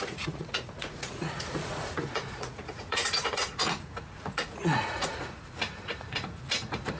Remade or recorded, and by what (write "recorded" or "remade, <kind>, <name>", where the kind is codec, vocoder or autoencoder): remade, vocoder, Vocos